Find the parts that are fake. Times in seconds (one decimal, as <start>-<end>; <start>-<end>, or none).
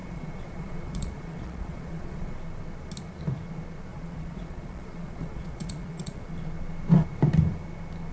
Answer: 0.0-2.4; 3.9-6.3